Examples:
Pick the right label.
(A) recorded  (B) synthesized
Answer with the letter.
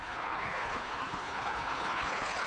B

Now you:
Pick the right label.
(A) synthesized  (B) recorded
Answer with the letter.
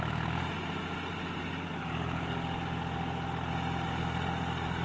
B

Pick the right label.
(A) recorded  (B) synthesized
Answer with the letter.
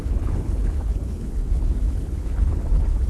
B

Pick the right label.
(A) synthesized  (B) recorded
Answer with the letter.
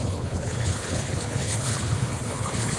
A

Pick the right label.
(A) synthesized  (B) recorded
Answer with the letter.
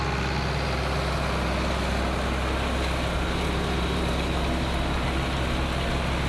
B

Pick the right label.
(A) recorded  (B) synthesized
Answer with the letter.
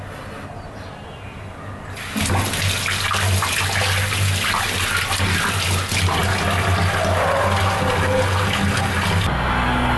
A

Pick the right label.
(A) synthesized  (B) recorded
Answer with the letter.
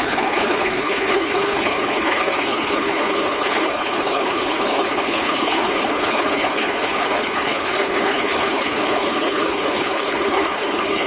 A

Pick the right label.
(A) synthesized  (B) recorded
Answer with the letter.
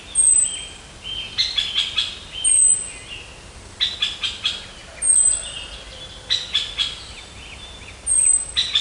B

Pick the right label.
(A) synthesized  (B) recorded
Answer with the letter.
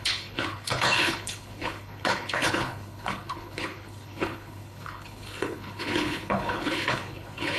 A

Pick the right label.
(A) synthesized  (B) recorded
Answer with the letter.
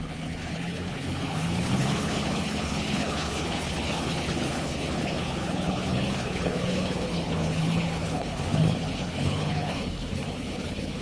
A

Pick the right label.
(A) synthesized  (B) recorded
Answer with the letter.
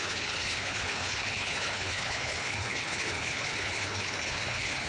A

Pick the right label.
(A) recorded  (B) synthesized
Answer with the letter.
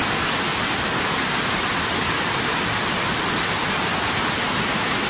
A